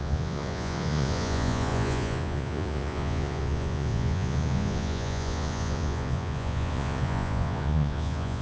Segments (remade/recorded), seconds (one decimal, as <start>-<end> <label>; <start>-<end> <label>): 0.0-8.4 remade